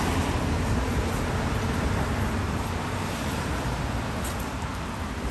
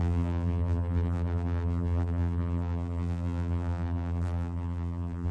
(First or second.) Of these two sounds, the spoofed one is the second